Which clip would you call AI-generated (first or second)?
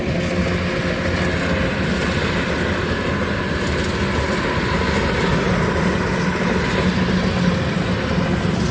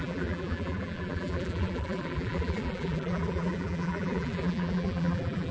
second